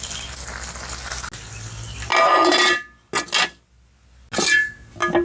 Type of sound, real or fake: real